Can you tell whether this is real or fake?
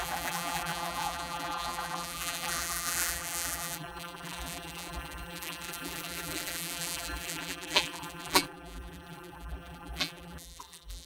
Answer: fake